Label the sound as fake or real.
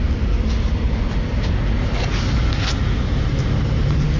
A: real